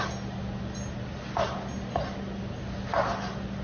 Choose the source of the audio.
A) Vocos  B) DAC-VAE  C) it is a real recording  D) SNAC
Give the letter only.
C